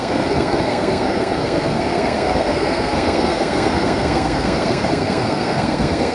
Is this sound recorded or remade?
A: remade